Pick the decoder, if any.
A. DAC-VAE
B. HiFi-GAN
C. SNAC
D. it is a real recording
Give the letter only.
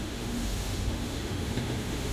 A